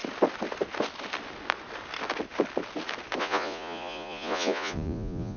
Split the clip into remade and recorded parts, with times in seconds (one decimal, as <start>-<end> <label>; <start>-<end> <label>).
0.0-3.2 recorded; 3.2-5.4 remade